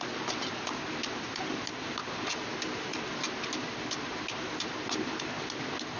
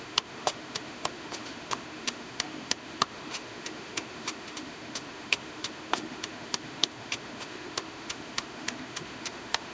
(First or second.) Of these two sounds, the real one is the first